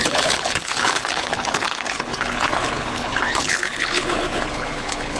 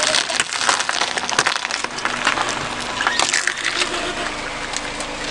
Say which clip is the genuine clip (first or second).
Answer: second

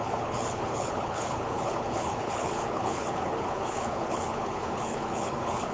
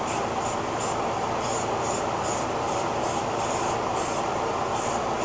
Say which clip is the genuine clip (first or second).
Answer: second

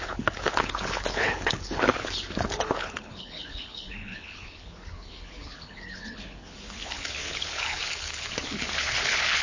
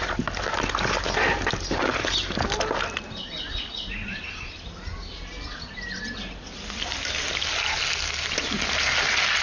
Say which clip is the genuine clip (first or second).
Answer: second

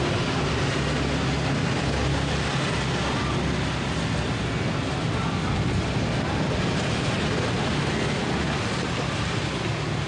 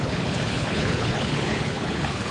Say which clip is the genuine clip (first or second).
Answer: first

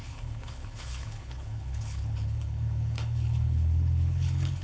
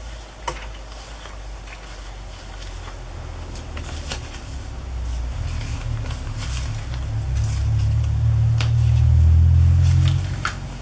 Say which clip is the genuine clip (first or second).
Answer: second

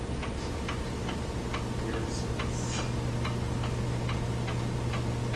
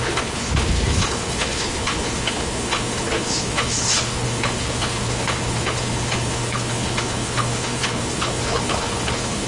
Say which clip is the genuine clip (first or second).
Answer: first